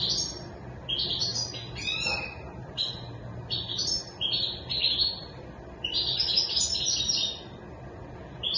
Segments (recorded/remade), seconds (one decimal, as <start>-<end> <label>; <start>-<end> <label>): 0.0-8.6 recorded